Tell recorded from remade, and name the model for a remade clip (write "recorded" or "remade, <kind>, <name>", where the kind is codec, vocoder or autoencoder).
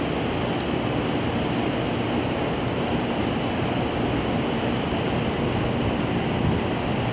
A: recorded